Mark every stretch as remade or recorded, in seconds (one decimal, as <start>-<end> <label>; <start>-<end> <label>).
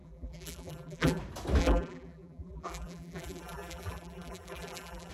0.0-1.2 remade; 1.2-1.6 recorded; 1.6-5.1 remade